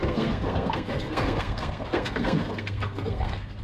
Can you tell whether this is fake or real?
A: fake